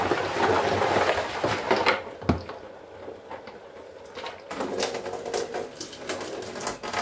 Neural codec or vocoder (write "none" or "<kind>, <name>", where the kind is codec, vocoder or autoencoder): none